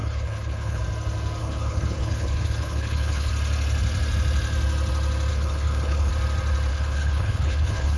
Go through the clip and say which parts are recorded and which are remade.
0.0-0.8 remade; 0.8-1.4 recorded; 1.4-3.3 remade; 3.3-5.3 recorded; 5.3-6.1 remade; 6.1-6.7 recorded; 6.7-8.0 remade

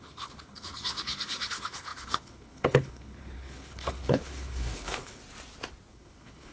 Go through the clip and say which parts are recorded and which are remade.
0.0-5.2 remade; 5.2-5.9 recorded; 5.9-6.5 remade